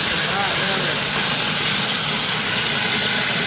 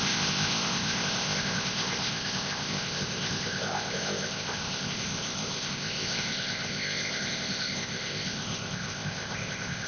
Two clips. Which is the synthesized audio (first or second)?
second